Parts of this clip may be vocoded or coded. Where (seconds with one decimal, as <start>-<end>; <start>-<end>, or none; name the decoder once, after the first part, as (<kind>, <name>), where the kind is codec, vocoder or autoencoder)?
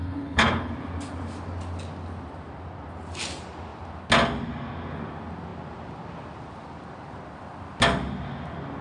0.0-0.7 (codec, HILCodec)